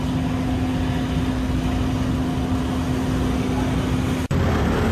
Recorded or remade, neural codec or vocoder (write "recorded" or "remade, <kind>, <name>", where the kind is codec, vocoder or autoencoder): recorded